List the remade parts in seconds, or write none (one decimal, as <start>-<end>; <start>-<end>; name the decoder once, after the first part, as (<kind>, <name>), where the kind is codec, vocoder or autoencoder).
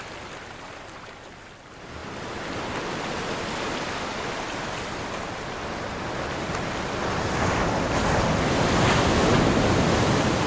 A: none